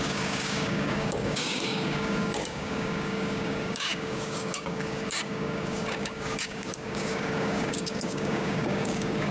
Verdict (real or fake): fake